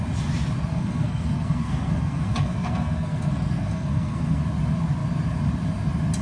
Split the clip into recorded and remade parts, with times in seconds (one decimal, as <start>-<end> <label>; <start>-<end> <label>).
0.0-0.7 recorded; 0.7-4.4 remade; 4.4-6.2 recorded